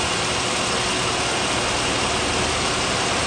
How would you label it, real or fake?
real